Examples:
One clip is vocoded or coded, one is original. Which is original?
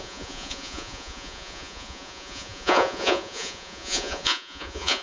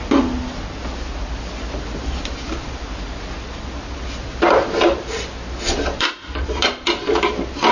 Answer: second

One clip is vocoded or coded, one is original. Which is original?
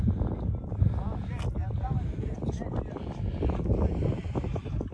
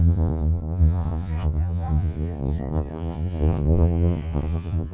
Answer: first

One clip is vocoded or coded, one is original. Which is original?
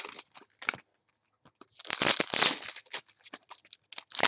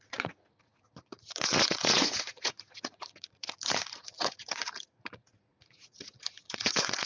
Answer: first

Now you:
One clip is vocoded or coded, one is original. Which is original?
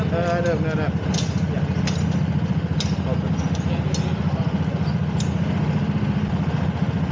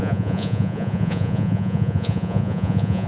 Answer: first